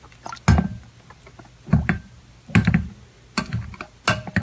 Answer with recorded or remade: recorded